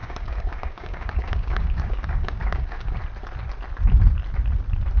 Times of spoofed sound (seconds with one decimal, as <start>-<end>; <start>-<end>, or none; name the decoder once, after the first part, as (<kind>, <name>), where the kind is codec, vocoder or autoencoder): 0.0-3.0 (codec, DAC)